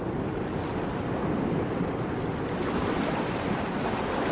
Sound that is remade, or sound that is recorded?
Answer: remade